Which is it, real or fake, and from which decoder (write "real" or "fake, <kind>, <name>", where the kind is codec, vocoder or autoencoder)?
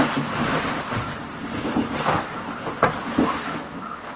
real